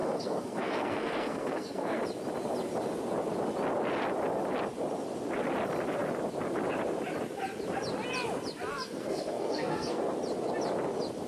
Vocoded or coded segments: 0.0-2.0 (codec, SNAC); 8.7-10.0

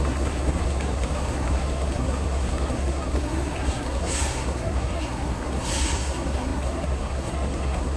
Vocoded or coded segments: 0.0-8.0 (codec, SNAC)

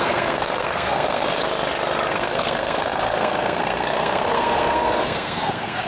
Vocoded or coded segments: 0.0-1.4 (codec, SNAC); 2.1-5.9

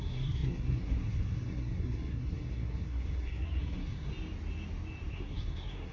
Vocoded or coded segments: 0.0-4.1 (codec, SNAC); 5.1-5.9

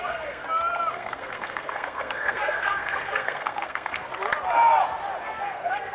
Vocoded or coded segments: 0.0-0.4 (codec, SNAC); 0.9-4.1; 5.2-5.9

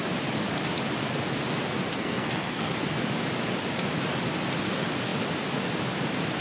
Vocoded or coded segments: 1.9-2.7 (codec, SNAC)

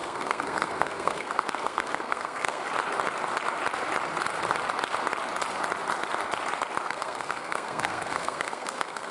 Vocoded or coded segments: 0.0-2.6 (codec, SNAC); 6.9-9.1